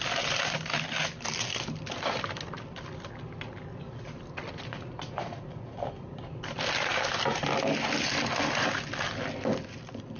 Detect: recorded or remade recorded